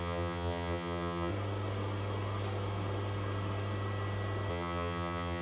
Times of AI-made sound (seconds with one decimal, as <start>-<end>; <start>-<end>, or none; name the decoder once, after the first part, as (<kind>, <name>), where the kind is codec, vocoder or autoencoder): 0.0-1.3 (vocoder, HiFi-GAN); 4.5-5.4